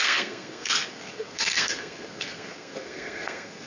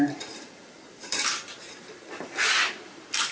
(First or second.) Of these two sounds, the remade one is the first